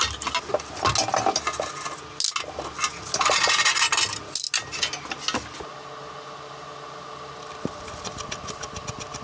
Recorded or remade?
recorded